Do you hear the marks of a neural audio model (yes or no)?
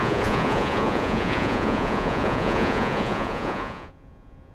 yes